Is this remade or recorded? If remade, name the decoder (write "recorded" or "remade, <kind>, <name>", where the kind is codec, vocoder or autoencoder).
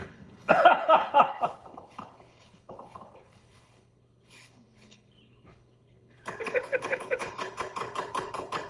remade, codec, HILCodec